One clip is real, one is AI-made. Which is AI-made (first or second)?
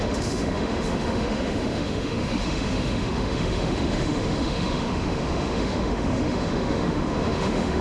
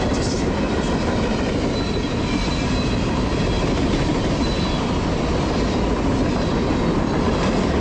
first